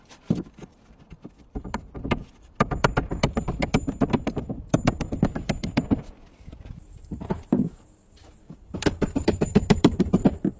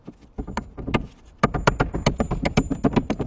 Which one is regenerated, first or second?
first